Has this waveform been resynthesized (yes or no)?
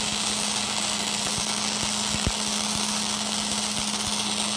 no